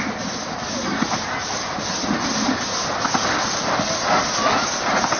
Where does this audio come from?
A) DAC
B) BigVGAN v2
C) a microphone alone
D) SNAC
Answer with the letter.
C